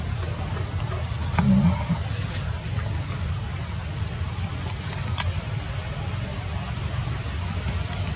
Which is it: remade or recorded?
recorded